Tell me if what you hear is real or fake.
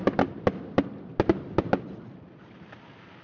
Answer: real